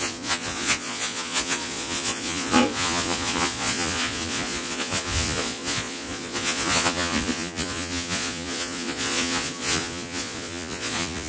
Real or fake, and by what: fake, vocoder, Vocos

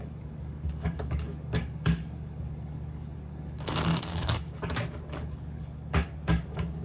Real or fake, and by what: fake, codec, DAC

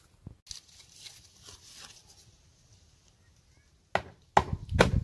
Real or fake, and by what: real